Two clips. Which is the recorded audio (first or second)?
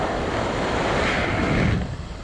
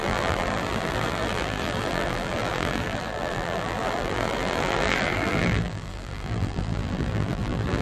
first